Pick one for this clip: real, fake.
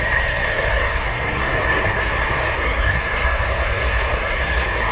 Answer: fake